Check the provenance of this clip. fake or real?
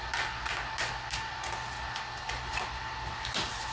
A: real